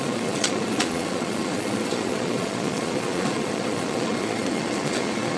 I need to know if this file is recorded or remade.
remade